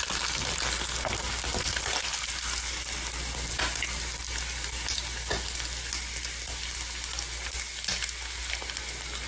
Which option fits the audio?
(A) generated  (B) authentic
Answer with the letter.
B